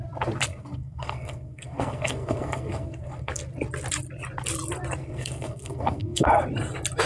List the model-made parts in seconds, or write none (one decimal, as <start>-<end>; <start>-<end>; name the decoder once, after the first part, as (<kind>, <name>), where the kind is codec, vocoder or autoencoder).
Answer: 0.5-3.3 (codec, SNAC); 5.0-6.4